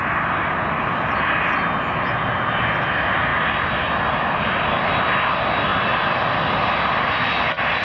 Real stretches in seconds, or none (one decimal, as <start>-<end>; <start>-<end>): 0.0-7.8

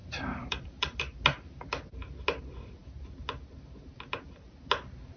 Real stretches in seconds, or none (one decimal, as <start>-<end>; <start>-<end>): 1.0-5.2

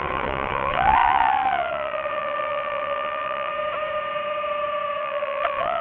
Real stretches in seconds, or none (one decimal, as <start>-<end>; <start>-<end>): 3.5-5.0

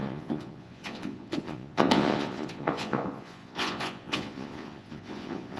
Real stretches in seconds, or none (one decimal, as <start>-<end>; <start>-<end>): none

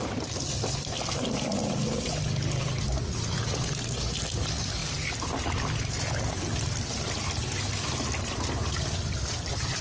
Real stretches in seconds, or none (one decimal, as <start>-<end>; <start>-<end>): 0.0-3.0; 3.7-9.8

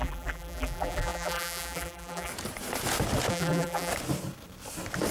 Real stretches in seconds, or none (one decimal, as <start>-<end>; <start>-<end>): 2.3-3.3; 3.9-5.1